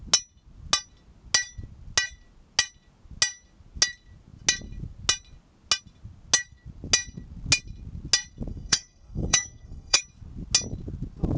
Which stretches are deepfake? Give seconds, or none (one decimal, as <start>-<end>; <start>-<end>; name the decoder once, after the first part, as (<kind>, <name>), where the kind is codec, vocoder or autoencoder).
8.5-10.0 (codec, SNAC)

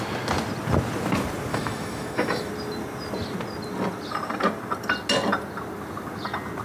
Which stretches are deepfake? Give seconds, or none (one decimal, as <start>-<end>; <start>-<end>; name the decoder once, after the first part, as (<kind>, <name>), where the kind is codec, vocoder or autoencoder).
1.5-2.5 (autoencoder, DAC-VAE)

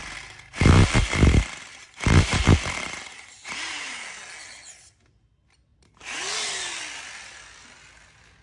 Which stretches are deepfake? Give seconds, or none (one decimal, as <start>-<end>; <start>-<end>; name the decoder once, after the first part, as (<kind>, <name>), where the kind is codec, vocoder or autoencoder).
1.7-4.0 (vocoder, BigVGAN v2); 5.7-6.2

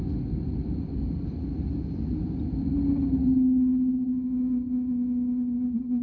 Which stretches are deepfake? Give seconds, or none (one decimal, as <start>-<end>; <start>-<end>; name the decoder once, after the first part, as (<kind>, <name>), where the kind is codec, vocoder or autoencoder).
none

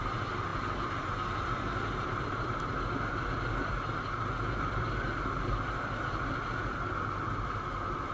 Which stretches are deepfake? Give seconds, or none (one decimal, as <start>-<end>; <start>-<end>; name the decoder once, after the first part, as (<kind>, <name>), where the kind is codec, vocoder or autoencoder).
none

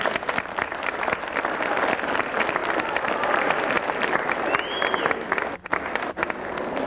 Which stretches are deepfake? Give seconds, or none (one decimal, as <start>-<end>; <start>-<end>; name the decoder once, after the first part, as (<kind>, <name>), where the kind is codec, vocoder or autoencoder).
5.7-6.3 (vocoder, BigVGAN v2)